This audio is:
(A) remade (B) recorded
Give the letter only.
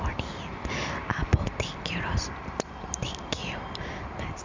B